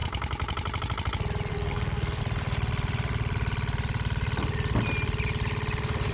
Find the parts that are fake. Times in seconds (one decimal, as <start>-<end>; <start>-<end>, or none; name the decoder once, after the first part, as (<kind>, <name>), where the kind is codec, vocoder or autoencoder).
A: 1.5-2.2 (codec, SNAC)

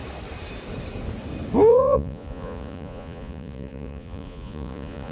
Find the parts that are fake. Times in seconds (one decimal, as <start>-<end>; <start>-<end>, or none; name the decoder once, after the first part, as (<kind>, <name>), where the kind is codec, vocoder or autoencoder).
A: 1.7-5.1 (vocoder, Vocos)

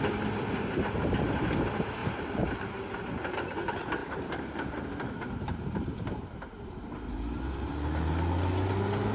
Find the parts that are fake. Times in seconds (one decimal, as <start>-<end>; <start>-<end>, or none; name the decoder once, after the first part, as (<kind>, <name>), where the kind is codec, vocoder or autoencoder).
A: 2.0-2.7 (vocoder, BigVGAN v2); 4.0-7.7

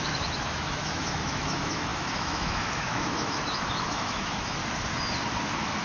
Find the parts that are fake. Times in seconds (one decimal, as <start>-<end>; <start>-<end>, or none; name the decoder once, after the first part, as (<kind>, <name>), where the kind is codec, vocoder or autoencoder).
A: 0.0-4.6 (autoencoder, DAC-VAE)